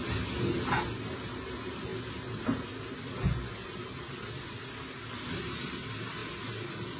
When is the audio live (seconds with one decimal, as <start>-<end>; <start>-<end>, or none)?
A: 0.0-1.9; 5.4-7.0